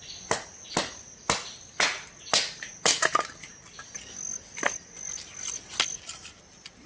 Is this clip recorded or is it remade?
recorded